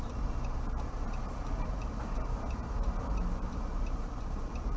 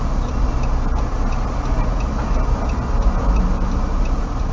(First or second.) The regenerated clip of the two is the first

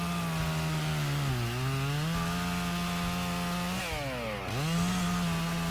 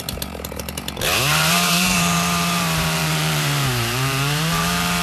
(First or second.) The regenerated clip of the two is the second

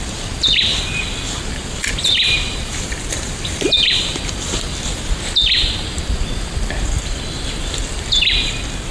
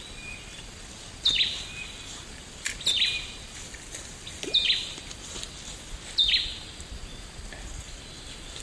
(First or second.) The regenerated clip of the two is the first